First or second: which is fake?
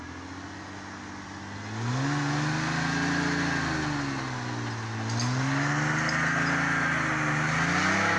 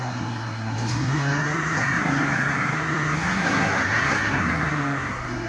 second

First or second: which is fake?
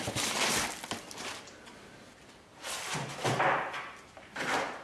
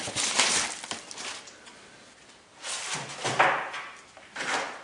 first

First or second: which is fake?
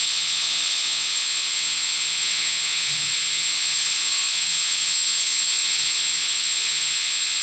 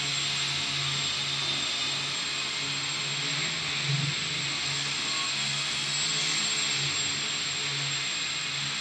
first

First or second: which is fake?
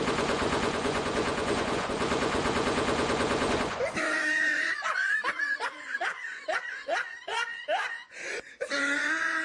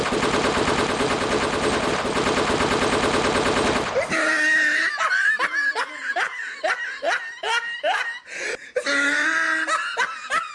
first